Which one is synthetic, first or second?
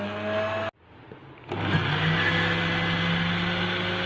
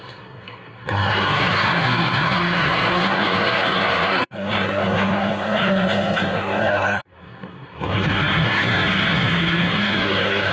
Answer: second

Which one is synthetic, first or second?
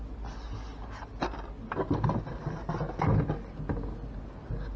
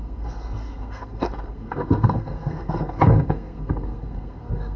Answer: second